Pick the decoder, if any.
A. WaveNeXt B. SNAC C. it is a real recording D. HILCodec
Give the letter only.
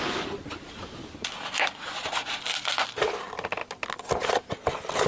C